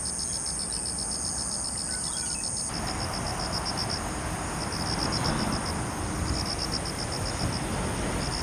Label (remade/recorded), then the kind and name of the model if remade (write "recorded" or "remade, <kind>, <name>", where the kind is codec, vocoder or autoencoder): recorded